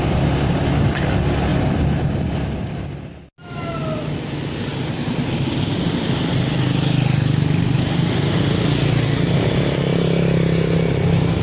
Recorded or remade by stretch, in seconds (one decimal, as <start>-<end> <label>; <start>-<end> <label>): 0.0-11.4 recorded